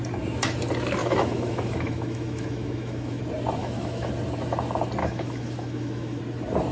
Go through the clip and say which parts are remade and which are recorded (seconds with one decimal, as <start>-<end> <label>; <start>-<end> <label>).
0.0-1.0 recorded; 1.0-3.2 remade; 3.2-3.6 recorded; 3.6-4.1 remade; 4.1-5.0 recorded; 5.0-6.2 remade; 6.2-6.7 recorded